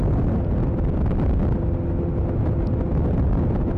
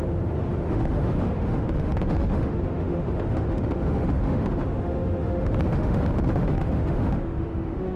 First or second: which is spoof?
second